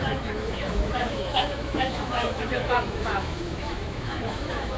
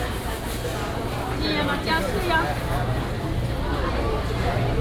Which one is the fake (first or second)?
first